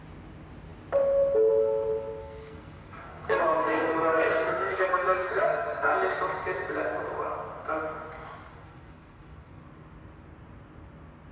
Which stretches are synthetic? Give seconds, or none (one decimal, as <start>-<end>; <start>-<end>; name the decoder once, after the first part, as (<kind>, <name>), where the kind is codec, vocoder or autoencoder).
2.2-6.1 (codec, SNAC); 8.5-9.6